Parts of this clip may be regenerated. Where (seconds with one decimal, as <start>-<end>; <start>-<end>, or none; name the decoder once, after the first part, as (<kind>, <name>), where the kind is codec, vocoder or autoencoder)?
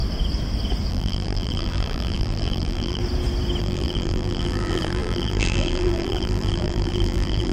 0.9-3.0 (vocoder, BigVGAN v2); 3.6-7.5